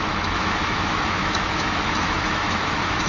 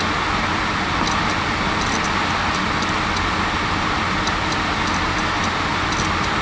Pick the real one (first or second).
second